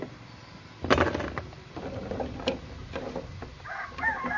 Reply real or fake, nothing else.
real